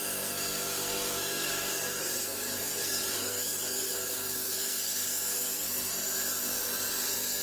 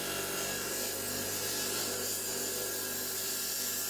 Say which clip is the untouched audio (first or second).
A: second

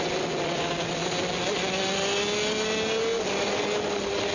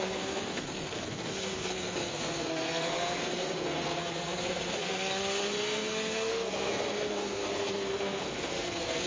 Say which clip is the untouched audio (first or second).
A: first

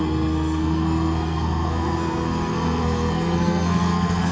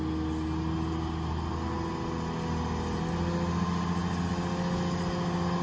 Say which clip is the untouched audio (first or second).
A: second